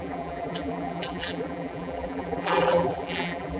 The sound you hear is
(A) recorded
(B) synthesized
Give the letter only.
B